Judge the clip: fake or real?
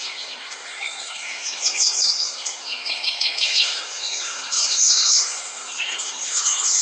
fake